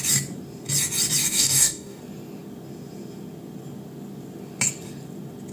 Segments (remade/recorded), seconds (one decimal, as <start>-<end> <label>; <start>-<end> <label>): 0.0-1.2 recorded; 1.2-2.0 remade; 2.0-5.5 recorded